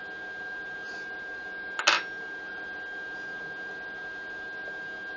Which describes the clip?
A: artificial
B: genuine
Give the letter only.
B